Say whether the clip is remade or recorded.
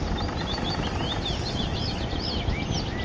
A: recorded